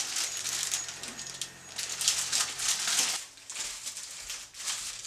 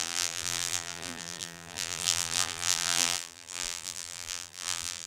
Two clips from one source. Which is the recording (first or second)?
first